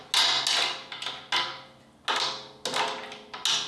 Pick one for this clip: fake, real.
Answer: real